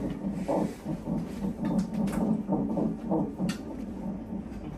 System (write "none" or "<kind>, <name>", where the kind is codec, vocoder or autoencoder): none